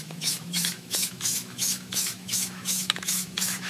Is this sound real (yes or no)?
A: no